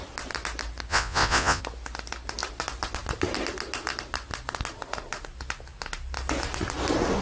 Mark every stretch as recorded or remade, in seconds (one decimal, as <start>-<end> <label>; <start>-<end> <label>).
0.0-0.9 recorded; 0.9-1.6 remade; 1.6-7.2 recorded